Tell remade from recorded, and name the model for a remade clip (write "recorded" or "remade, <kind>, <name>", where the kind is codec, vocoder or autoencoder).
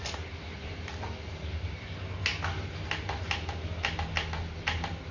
recorded